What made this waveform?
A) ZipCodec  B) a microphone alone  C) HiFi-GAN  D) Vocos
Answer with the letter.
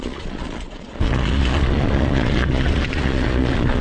D